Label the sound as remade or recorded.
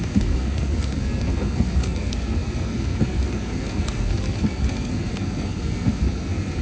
remade